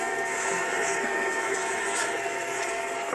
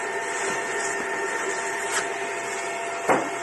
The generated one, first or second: first